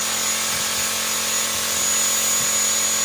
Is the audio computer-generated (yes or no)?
no